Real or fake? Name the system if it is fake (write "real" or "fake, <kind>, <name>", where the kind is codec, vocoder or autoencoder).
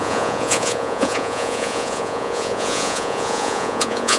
fake, vocoder, Vocos